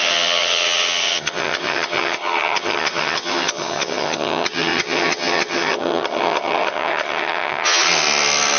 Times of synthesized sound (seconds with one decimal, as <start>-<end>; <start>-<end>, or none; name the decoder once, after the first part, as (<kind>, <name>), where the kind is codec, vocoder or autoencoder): 0.0-7.8 (vocoder, HiFi-GAN)

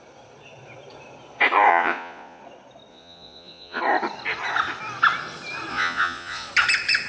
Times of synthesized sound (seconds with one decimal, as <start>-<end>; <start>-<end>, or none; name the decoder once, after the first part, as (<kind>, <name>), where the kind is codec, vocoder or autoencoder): 1.7-2.4 (vocoder, Vocos); 2.9-3.8; 5.7-6.5

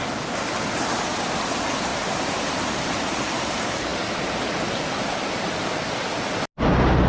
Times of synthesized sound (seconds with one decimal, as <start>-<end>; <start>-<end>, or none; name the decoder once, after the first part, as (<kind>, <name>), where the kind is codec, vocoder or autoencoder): none

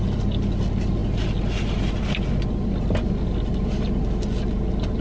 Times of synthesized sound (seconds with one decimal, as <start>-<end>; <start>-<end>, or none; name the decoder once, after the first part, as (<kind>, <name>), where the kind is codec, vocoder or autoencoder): none

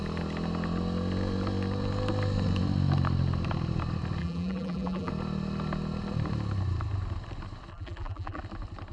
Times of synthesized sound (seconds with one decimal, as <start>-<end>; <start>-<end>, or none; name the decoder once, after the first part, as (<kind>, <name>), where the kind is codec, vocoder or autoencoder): 4.2-5.1 (vocoder, BigVGAN v2); 7.7-8.4